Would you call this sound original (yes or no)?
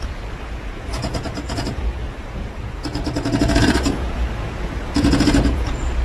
no